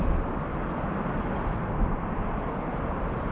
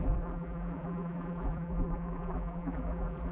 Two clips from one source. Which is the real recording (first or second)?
first